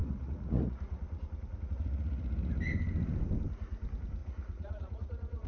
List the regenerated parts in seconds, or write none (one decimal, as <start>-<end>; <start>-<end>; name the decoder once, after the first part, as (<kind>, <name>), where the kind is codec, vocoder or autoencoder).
0.0-2.6 (vocoder, Vocos); 4.2-5.5